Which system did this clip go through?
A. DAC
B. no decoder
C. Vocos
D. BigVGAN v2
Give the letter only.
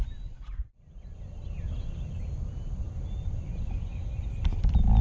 B